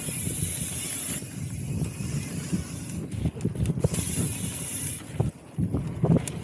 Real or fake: real